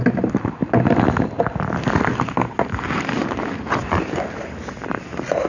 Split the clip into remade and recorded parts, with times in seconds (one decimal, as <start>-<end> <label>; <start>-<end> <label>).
0.0-5.5 recorded